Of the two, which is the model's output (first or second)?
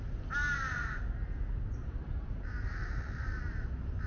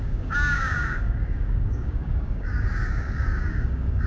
second